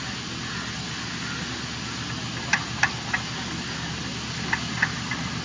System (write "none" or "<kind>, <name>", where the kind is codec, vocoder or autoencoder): none